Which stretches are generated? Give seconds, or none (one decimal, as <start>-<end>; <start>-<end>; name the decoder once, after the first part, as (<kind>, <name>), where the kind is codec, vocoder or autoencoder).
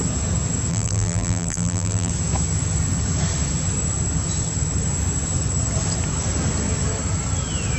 0.7-2.1 (vocoder, BigVGAN v2)